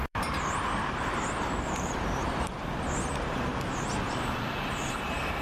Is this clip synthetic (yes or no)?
yes